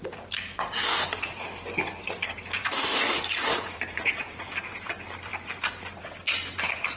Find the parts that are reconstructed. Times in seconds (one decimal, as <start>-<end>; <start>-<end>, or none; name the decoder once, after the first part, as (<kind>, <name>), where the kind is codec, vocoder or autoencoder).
2.6-4.4 (vocoder, Vocos)